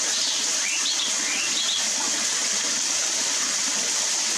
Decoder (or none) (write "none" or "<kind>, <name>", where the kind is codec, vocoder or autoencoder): none